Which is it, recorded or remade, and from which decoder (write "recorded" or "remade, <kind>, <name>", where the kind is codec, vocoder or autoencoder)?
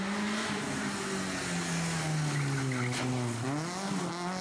recorded